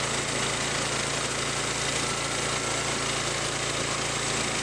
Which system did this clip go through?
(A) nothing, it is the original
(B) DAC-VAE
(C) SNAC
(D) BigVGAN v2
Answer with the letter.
A